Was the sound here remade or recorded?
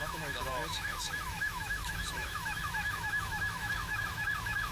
remade